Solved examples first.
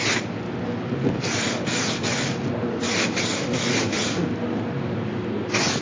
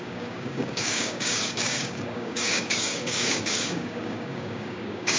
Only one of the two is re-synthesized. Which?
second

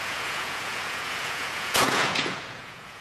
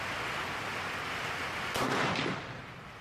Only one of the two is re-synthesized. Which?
first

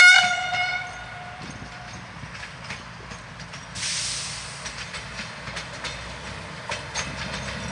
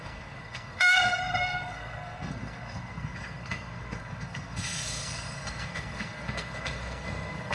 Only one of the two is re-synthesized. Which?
second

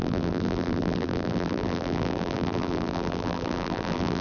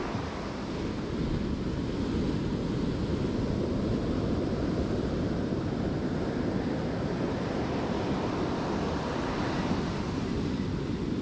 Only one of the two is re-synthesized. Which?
first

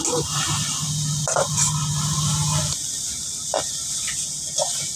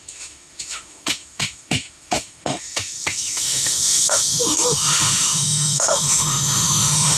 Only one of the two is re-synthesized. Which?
second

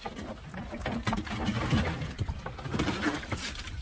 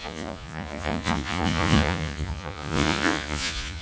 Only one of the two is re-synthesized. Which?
second